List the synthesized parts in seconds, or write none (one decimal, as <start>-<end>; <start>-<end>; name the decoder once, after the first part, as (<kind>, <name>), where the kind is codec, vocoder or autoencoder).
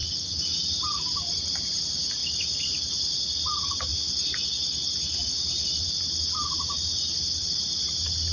1.0-2.2 (vocoder, BigVGAN v2); 2.7-8.3